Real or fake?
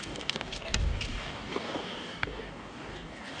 fake